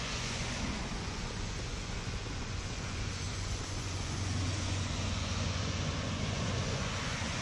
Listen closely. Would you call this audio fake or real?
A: fake